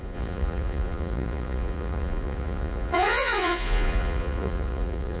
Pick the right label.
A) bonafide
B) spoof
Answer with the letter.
B